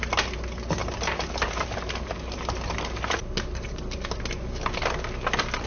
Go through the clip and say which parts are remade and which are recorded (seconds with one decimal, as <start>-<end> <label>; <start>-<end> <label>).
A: 0.0-0.8 recorded; 0.8-4.2 remade; 4.2-5.7 recorded